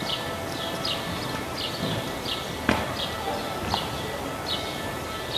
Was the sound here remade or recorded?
recorded